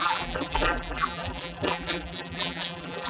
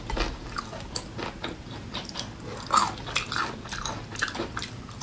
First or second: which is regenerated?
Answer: first